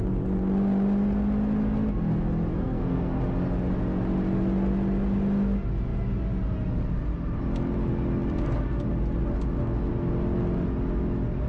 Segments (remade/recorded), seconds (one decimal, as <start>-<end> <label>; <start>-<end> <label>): 0.0-2.5 recorded; 2.5-3.2 remade; 3.2-11.5 recorded